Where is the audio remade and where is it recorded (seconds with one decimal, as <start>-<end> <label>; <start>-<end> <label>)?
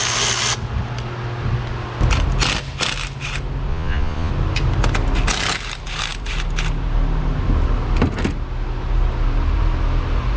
0.0-3.7 recorded; 3.7-4.3 remade; 4.3-10.4 recorded